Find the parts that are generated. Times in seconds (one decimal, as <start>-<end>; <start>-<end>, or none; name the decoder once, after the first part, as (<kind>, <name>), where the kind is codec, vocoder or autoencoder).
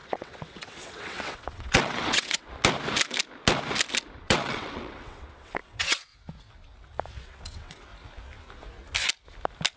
0.0-2.5 (vocoder, WaveNeXt); 4.2-6.1; 7.1-7.9